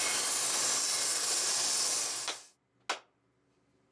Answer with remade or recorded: recorded